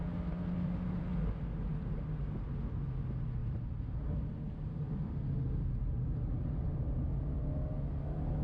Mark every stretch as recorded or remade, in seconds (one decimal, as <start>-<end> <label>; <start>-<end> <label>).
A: 0.0-3.4 recorded; 3.4-4.9 remade; 4.9-8.4 recorded